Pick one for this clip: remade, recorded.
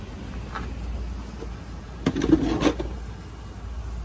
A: recorded